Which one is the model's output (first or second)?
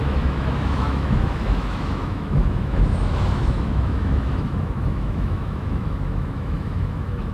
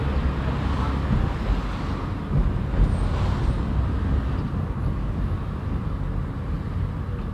first